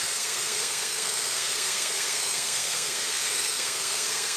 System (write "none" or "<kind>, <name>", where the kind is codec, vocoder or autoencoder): codec, SNAC